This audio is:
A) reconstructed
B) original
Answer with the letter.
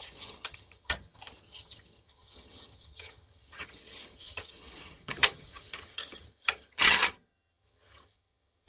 A